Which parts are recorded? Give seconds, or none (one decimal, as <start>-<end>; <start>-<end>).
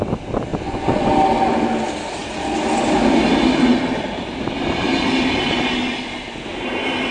0.0-0.5; 1.1-7.1